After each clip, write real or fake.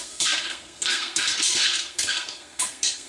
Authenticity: fake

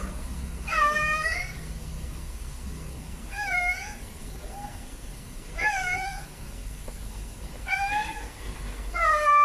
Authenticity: fake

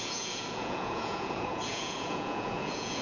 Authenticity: fake